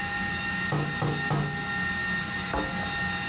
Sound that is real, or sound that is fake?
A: real